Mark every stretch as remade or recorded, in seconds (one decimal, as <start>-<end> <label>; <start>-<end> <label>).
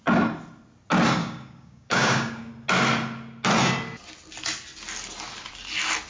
0.0-1.2 recorded; 1.2-2.5 remade; 2.5-6.1 recorded